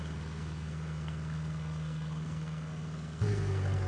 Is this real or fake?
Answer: fake